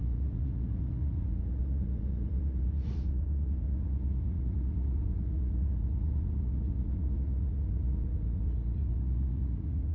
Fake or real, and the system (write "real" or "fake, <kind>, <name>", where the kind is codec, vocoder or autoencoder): fake, vocoder, Vocos